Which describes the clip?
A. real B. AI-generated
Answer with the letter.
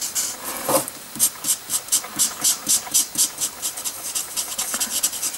A